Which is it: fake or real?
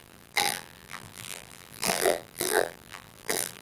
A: fake